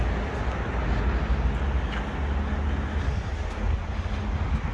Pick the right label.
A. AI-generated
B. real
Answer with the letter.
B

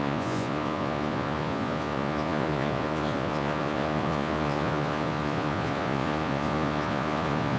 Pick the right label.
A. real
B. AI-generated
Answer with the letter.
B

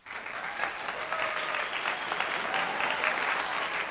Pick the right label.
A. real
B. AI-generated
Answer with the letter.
A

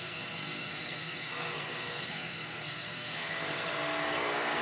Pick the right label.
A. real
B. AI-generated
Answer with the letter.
B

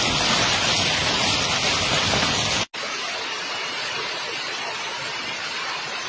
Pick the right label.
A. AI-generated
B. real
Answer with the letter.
B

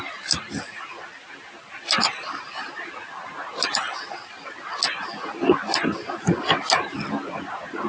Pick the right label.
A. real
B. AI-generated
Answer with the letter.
A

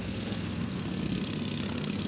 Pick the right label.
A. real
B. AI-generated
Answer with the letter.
B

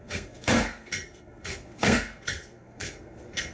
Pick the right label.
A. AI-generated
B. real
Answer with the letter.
A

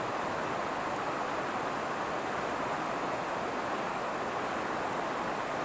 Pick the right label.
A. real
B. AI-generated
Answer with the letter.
A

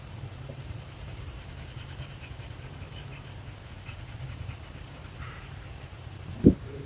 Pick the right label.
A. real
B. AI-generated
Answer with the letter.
B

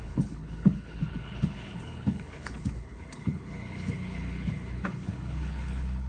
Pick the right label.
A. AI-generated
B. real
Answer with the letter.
A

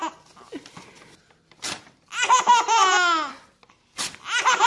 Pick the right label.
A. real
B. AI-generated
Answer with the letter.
A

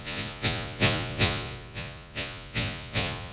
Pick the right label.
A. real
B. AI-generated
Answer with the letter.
B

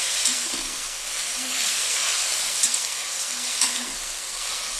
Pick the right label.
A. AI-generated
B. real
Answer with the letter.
A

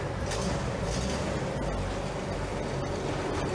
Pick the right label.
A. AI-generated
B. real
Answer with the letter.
B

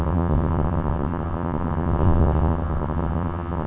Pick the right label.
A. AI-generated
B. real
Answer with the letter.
A